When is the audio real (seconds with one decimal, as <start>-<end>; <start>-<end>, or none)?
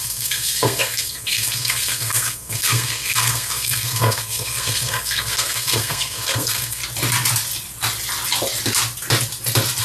6.8-9.8